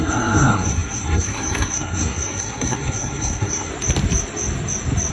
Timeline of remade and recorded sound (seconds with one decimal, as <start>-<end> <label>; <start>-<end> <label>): 0.0-3.7 remade; 3.7-5.1 recorded